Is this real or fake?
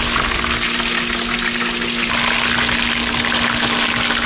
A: real